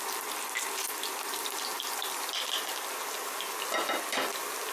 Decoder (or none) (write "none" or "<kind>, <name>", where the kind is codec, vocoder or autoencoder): none